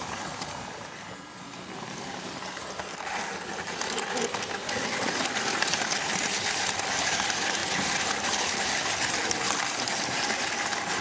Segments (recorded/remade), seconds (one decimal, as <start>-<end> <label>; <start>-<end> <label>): 0.0-11.0 recorded